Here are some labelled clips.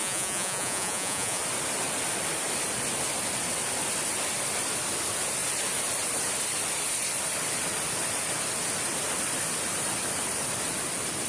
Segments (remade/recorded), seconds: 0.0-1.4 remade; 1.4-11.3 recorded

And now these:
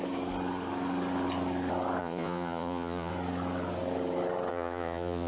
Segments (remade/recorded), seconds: 0.0-2.0 recorded; 2.0-3.1 remade; 3.1-4.5 recorded; 4.5-5.3 remade

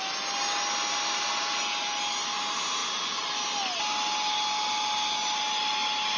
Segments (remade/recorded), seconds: 0.0-6.2 recorded

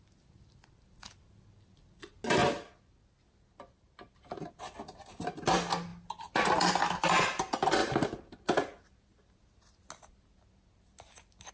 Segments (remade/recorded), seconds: 0.0-11.5 recorded

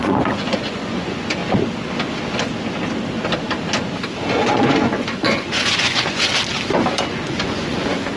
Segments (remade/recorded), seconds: 0.0-1.4 remade; 1.4-4.3 recorded; 4.3-6.3 remade; 6.3-7.1 recorded; 7.1-8.2 remade

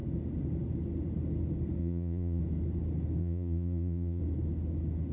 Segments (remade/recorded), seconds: 0.0-1.8 recorded; 1.8-2.4 remade; 2.4-3.2 recorded; 3.2-4.2 remade; 4.2-5.1 recorded

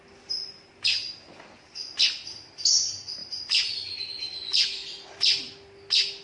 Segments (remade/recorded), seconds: 0.0-6.2 recorded

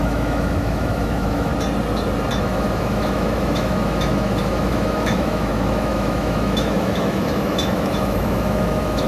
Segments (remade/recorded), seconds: 0.0-1.5 remade; 1.5-2.4 recorded; 2.4-9.1 remade